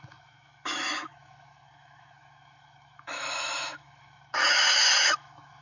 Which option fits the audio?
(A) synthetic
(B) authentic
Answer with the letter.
A